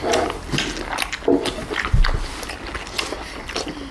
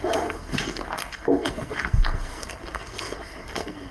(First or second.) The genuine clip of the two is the first